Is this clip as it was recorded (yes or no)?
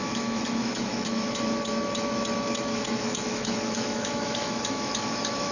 no